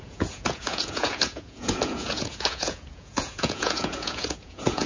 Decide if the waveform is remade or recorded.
remade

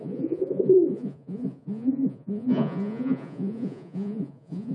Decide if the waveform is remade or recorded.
remade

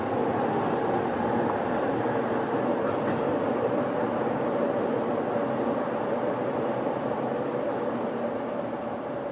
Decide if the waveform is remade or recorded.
recorded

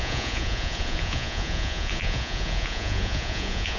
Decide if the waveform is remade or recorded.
remade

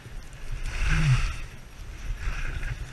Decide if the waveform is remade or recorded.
recorded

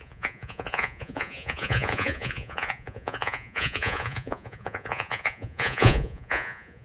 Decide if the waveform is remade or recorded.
remade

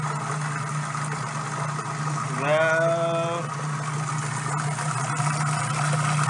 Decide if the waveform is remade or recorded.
recorded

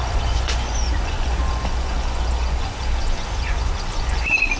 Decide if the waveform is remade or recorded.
remade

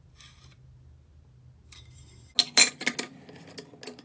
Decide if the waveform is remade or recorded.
recorded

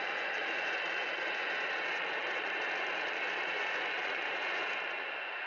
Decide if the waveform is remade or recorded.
remade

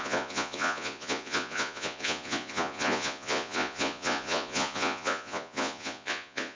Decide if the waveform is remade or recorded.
remade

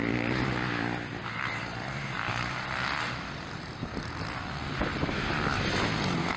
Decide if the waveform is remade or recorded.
recorded